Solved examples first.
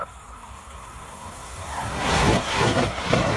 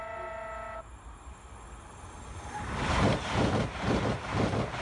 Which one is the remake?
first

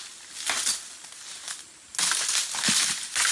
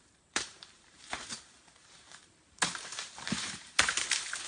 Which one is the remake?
second